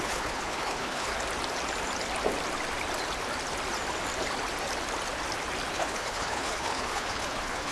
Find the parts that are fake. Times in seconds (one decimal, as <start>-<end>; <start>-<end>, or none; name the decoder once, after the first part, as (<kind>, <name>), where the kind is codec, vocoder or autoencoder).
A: 0.0-1.1 (codec, HILCodec); 5.7-7.7